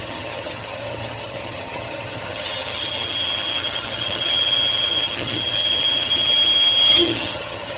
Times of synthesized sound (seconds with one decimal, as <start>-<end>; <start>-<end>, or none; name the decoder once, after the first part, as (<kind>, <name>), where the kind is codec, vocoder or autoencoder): 0.0-7.8 (vocoder, HiFi-GAN)